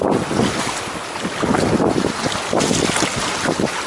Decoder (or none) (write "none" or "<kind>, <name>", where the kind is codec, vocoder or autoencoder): none